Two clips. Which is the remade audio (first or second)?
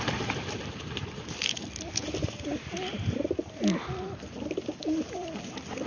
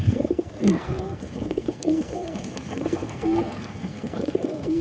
second